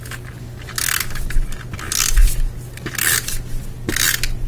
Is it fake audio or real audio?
real